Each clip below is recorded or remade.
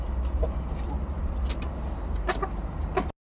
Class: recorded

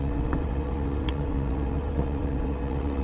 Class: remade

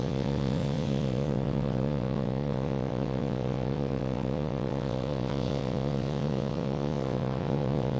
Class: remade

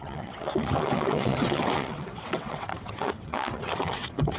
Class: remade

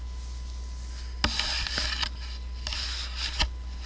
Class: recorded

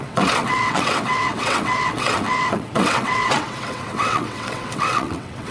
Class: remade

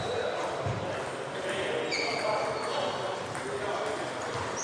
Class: recorded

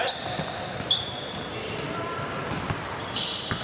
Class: recorded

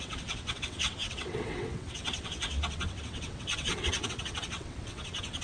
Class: remade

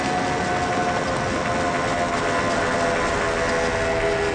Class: recorded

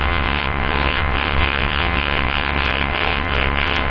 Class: remade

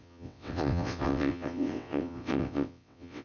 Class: remade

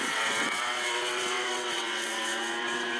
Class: remade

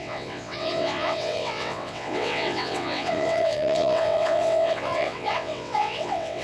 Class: remade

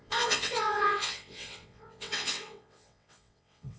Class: remade